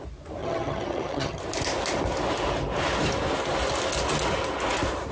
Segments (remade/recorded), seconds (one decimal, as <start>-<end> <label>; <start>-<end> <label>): 0.0-0.4 recorded; 0.4-1.4 remade; 1.4-5.1 recorded